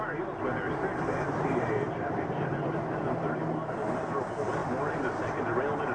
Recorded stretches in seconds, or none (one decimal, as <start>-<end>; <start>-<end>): 0.0-0.9; 3.4-4.6; 5.4-5.9